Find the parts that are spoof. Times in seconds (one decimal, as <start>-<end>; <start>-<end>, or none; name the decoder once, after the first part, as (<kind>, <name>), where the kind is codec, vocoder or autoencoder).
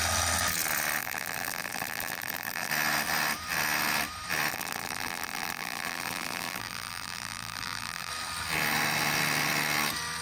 1.0-2.7 (vocoder, BigVGAN v2); 4.5-8.1